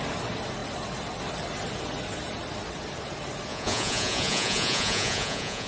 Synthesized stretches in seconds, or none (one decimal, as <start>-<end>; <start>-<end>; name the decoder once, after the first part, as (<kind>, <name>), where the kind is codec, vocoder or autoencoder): 3.5-5.7 (vocoder, Vocos)